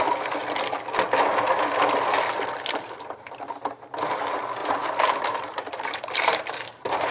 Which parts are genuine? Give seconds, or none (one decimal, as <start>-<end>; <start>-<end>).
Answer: 0.4-3.2